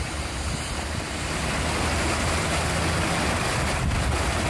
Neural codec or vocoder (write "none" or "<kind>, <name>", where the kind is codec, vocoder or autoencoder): none